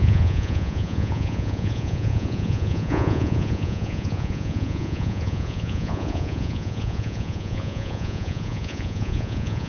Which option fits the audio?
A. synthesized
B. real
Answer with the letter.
A